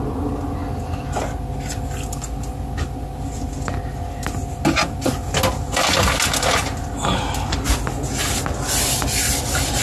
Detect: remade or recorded recorded